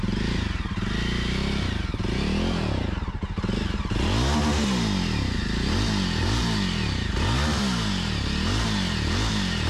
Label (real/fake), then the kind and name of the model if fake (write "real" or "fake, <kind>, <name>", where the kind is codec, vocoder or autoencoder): real